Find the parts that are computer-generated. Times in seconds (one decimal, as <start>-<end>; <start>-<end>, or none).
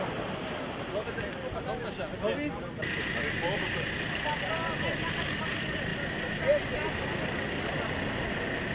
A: none